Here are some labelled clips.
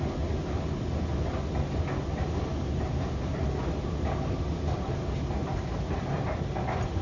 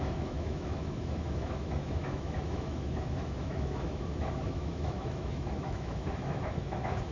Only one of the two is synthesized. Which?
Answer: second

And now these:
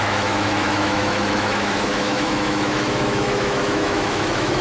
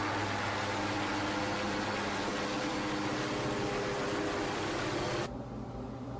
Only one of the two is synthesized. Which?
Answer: first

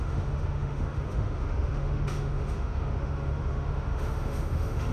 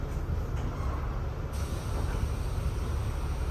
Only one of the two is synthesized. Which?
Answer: first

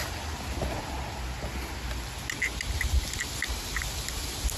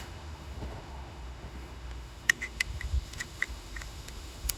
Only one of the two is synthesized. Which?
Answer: second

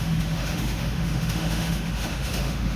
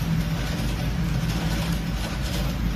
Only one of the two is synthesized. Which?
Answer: first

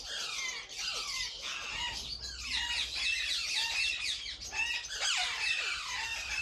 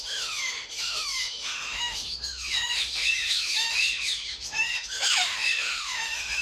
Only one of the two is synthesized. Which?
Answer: second